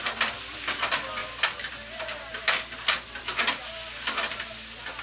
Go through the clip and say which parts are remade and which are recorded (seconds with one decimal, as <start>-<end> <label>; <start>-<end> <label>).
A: 0.0-5.0 recorded